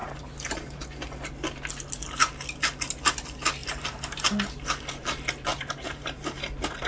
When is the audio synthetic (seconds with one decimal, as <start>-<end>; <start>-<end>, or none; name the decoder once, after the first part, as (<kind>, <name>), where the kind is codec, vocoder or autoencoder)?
0.0-0.8 (vocoder, BigVGAN v2); 3.6-4.2; 5.5-6.4